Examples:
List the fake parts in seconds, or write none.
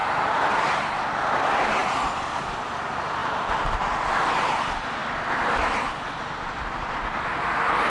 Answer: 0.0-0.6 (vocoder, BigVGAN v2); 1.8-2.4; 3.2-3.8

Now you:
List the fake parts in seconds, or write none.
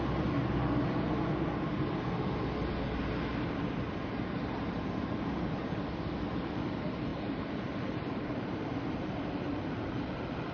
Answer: 0.0-0.4 (vocoder, BigVGAN v2); 4.5-10.5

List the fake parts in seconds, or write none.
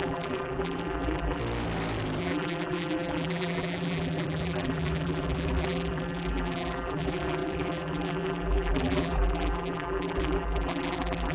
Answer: 0.0-1.4 (vocoder, BigVGAN v2); 2.2-11.3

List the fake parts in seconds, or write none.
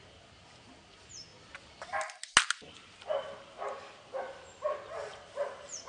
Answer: 5.1-5.9 (vocoder, BigVGAN v2)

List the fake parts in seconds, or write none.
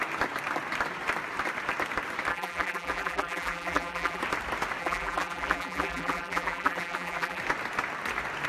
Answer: 2.3-4.2 (vocoder, BigVGAN v2); 4.8-7.4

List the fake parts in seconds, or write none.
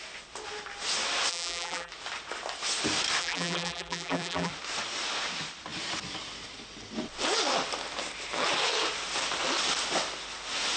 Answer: 1.3-1.9 (vocoder, BigVGAN v2); 3.2-4.5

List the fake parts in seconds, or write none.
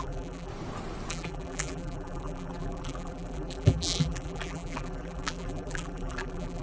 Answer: 0.0-0.5 (vocoder, BigVGAN v2); 1.1-6.6